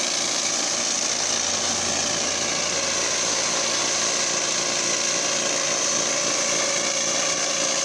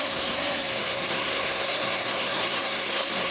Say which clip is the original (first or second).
first